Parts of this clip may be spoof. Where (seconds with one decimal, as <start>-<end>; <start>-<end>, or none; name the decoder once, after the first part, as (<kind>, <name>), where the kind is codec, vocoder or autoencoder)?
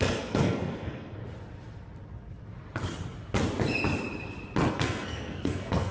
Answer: 0.0-1.2 (codec, SNAC); 4.7-5.9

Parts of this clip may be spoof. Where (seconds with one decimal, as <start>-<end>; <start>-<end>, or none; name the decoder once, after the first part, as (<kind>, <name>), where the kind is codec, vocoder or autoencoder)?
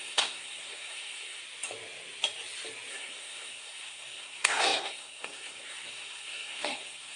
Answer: 0.0-1.4 (codec, SNAC); 2.9-7.2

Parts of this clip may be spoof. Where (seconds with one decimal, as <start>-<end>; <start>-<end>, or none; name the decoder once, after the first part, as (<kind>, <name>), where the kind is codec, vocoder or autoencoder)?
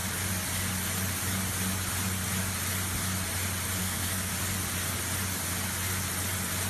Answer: 3.8-4.3 (codec, SNAC)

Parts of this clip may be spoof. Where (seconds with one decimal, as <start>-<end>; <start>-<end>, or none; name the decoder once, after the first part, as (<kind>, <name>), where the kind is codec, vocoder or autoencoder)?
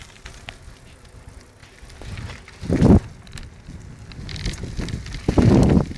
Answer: none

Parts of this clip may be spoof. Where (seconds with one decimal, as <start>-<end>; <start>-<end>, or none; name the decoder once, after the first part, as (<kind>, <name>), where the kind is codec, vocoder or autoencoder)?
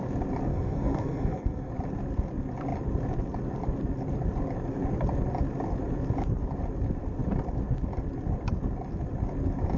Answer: 0.5-1.7 (codec, SNAC)